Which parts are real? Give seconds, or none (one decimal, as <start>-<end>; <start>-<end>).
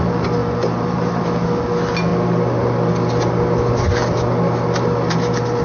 0.0-0.4; 1.2-5.6